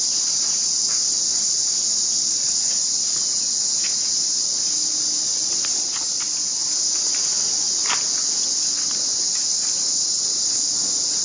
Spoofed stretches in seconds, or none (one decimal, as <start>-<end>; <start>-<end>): none